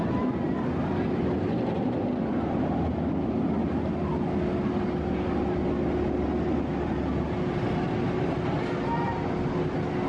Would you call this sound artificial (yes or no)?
no